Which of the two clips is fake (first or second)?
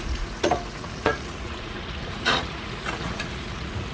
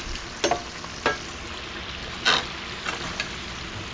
first